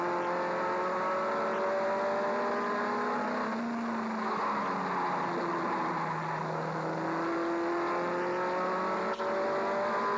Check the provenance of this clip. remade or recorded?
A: recorded